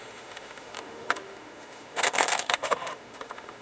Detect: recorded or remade remade